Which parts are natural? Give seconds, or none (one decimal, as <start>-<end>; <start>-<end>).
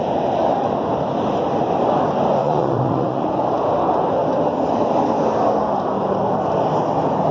0.0-2.4; 3.3-7.3